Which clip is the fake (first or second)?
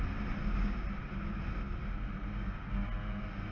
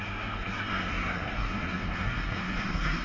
second